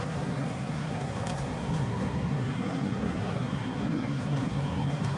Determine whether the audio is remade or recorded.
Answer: remade